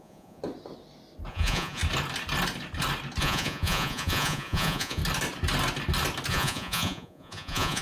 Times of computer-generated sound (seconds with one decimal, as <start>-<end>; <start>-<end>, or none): 0.0-0.4; 1.3-1.8; 3.2-5.0; 6.3-7.8